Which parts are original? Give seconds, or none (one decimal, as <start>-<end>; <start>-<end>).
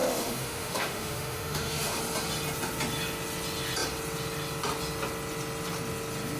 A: 2.0-6.4